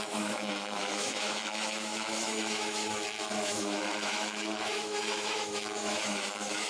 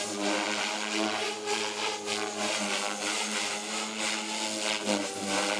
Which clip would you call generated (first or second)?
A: first